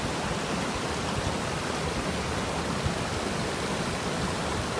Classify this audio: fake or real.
real